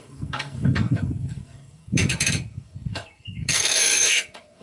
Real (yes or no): no